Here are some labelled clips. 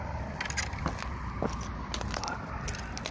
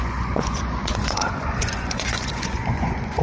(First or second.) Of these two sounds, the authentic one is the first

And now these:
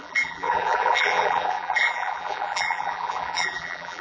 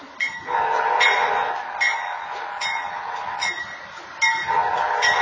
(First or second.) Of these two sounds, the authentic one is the second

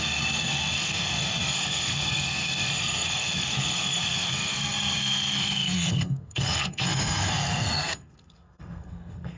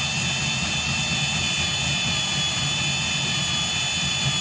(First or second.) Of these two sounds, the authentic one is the second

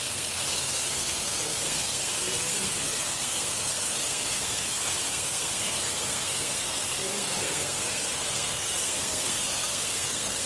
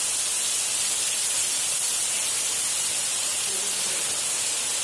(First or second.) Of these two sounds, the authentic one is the second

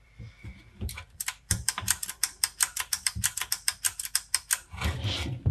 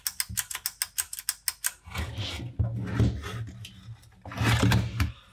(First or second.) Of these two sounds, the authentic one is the second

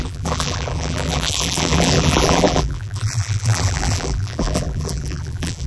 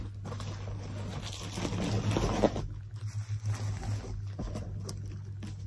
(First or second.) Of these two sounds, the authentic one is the second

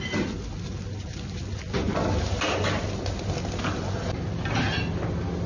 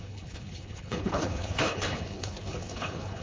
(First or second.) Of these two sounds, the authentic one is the first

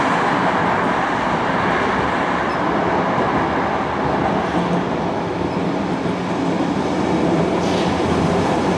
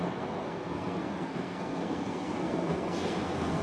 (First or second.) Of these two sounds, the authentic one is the first